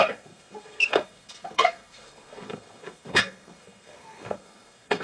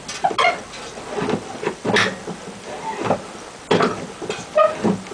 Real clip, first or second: second